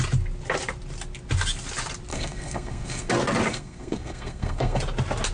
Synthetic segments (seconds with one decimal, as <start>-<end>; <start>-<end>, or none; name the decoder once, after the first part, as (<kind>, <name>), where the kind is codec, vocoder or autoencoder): 2.1-3.1 (codec, SNAC); 3.5-4.8